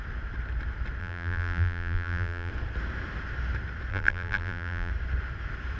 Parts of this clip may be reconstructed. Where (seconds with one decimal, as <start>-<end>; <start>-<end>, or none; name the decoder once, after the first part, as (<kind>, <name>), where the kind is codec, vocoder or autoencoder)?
1.0-2.5 (vocoder, BigVGAN v2); 3.9-4.9